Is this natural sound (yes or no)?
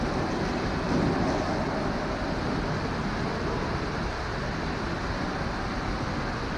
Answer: yes